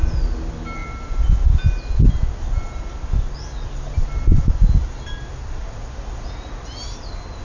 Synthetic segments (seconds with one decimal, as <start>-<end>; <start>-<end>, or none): 5.4-6.0